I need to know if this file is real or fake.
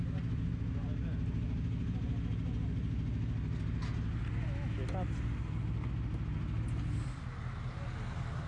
real